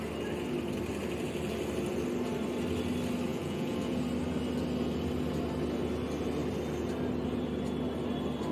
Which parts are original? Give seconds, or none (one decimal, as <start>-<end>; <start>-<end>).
0.0-3.3; 4.0-8.5